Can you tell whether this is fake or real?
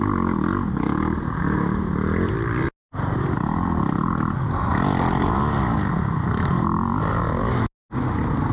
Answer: real